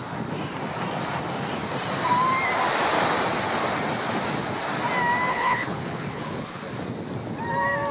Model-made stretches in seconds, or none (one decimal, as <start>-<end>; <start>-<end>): 5.3-6.6